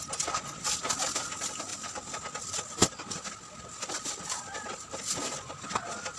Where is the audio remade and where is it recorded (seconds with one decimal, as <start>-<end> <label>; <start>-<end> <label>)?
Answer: 0.0-1.7 recorded; 1.7-2.8 remade; 2.8-6.2 recorded